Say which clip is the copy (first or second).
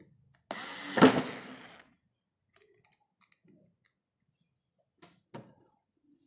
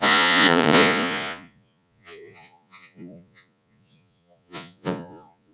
second